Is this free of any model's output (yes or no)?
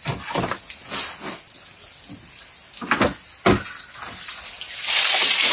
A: yes